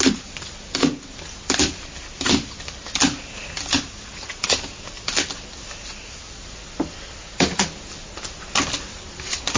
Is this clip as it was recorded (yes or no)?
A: yes